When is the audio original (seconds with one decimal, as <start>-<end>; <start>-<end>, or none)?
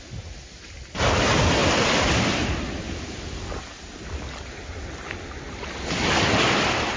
0.0-7.0